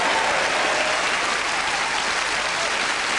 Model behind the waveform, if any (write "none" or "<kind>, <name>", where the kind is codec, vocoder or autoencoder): none